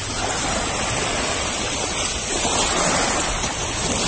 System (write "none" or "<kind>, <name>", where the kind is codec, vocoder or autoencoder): none